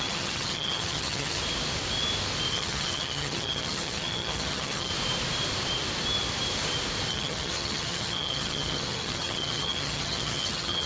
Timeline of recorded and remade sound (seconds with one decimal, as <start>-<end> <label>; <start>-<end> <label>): 0.0-1.4 remade; 1.4-2.5 recorded; 2.5-4.9 remade; 4.9-7.1 recorded; 7.1-10.9 remade